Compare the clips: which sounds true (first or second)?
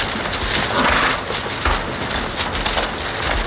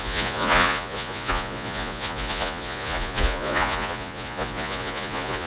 first